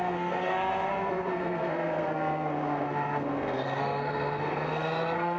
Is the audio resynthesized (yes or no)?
yes